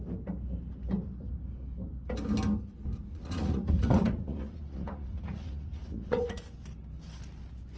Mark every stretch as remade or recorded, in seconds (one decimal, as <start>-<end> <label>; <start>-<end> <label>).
0.0-3.1 recorded; 3.1-6.4 remade; 6.4-7.8 recorded